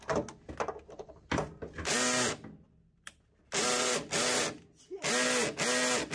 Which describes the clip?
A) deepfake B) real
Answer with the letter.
B